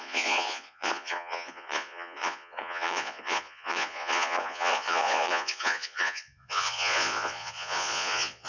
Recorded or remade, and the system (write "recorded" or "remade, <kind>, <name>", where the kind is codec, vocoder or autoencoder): remade, vocoder, Vocos